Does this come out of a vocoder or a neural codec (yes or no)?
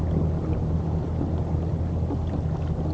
no